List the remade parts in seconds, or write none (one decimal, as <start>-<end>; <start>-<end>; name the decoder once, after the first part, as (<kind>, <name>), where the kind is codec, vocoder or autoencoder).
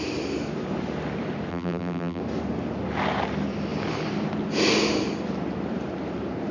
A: 1.5-2.2 (vocoder, BigVGAN v2)